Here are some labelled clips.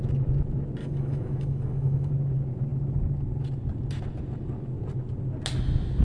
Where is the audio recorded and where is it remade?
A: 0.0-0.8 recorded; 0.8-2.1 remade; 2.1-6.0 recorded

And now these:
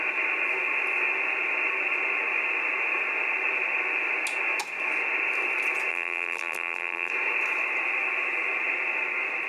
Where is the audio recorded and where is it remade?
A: 0.0-5.9 recorded; 5.9-7.1 remade; 7.1-9.5 recorded

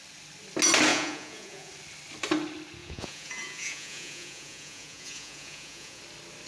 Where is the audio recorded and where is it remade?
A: 0.0-0.9 recorded; 0.9-1.7 remade; 1.7-2.8 recorded; 2.8-6.0 remade; 6.0-6.5 recorded

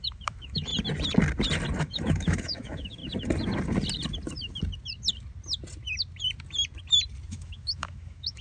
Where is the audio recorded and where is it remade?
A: 0.0-0.7 remade; 0.7-1.8 recorded; 1.8-3.0 remade; 3.0-7.3 recorded; 7.3-8.4 remade

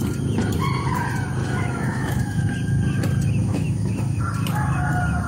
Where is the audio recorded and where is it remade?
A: 0.0-1.4 recorded; 1.4-2.4 remade; 2.4-3.4 recorded; 3.4-4.2 remade; 4.2-5.3 recorded

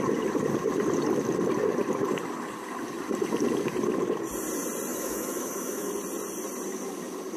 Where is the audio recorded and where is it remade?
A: 0.0-4.9 recorded; 4.9-5.9 remade; 5.9-7.4 recorded

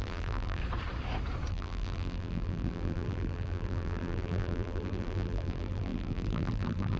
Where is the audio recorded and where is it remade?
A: 0.0-0.6 remade; 0.6-1.5 recorded; 1.5-7.0 remade